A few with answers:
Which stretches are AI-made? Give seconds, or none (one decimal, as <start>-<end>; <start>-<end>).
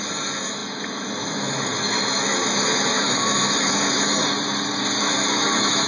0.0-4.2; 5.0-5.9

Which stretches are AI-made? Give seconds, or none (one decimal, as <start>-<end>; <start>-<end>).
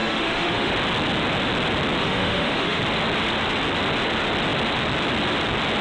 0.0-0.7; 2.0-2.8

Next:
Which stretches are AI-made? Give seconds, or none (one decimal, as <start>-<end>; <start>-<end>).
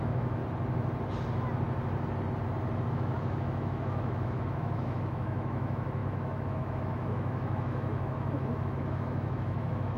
0.0-0.4; 2.9-10.0